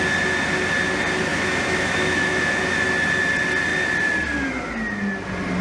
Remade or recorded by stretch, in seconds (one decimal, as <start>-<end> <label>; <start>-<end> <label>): 0.0-1.3 recorded; 1.3-2.6 remade; 2.6-5.6 recorded

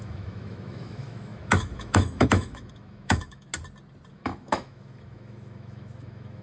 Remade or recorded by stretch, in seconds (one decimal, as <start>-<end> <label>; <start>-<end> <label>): 0.0-3.5 remade; 3.5-4.1 recorded; 4.1-6.4 remade

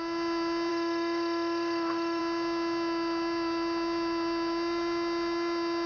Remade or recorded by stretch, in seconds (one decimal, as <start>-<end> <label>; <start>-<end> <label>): 0.0-0.7 recorded; 0.7-2.2 remade; 2.2-5.9 recorded

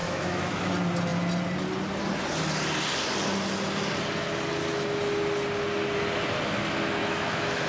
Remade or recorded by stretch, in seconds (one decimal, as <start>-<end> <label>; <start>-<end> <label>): 0.0-0.7 remade; 0.7-7.0 recorded; 7.0-7.7 remade

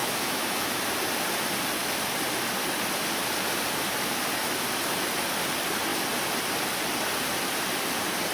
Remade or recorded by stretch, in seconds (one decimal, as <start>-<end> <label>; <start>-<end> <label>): 0.0-0.8 remade; 0.8-8.3 recorded

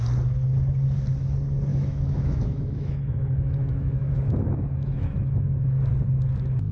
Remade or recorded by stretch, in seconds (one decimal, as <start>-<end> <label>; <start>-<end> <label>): 0.0-1.7 recorded; 1.7-5.7 remade; 5.7-6.7 recorded